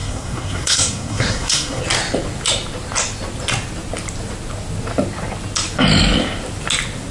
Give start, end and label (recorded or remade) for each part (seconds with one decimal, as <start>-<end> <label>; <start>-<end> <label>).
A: 0.0-1.8 remade; 1.8-7.1 recorded